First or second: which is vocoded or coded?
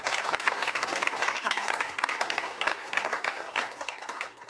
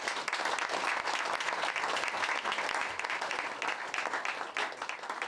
first